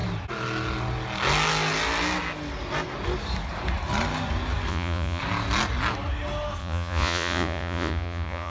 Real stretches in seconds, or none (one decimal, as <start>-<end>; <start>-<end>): 0.0-4.7; 5.2-6.6